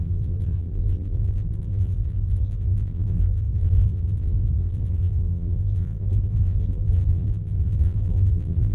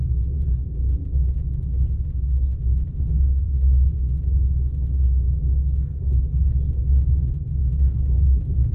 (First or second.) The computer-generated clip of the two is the first